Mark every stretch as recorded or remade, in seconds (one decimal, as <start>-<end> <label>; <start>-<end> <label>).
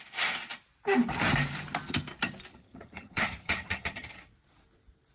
0.0-2.5 recorded; 2.5-4.2 remade; 4.2-5.1 recorded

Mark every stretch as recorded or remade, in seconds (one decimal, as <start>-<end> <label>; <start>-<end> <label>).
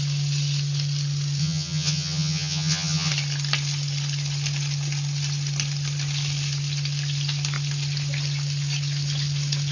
0.0-1.4 recorded; 1.4-3.1 remade; 3.1-9.7 recorded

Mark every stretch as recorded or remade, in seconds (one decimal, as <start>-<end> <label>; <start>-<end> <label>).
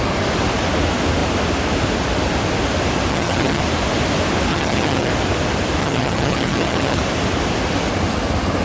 0.0-3.1 recorded; 3.1-3.6 remade; 3.6-4.5 recorded; 4.5-5.1 remade; 5.1-5.8 recorded; 5.8-7.0 remade; 7.0-8.6 recorded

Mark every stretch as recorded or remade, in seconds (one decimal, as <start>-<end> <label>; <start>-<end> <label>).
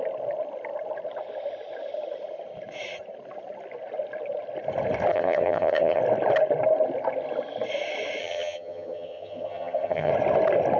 0.0-5.1 recorded; 5.1-6.0 remade; 6.0-8.2 recorded; 8.2-10.1 remade; 10.1-10.8 recorded